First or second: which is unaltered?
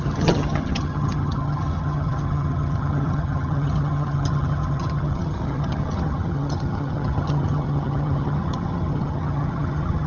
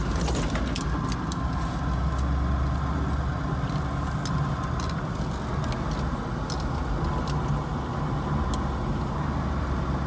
second